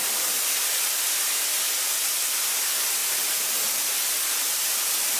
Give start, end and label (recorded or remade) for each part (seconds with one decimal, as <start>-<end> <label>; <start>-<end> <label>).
0.0-5.2 recorded